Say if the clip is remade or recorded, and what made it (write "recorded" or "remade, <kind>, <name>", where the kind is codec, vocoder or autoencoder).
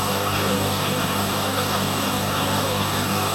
remade, codec, DAC